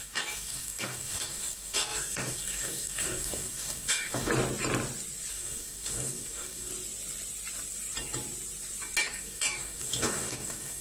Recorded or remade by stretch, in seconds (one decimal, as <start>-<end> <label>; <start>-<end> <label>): 0.0-4.3 remade; 4.3-5.3 recorded; 5.3-6.7 remade; 6.7-9.0 recorded; 9.0-10.8 remade